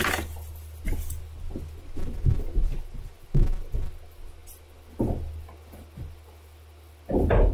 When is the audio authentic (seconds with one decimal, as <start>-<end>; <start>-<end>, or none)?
0.0-7.5